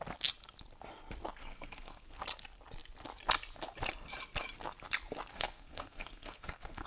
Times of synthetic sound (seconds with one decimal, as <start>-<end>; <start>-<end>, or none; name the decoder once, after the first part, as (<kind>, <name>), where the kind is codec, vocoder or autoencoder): 1.4-2.2 (codec, SNAC); 5.3-6.9